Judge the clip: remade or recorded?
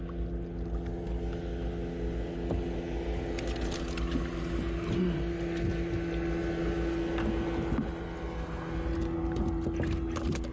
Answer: recorded